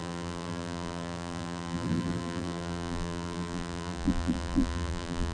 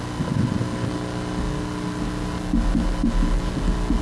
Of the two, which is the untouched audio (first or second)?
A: second